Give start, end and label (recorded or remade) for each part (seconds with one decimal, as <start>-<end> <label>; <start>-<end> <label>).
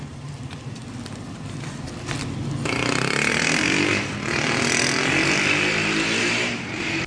0.0-0.8 remade; 0.8-3.3 recorded; 3.3-3.9 remade; 3.9-6.2 recorded; 6.2-7.1 remade